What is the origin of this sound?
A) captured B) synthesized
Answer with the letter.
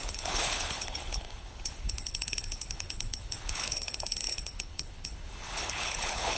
B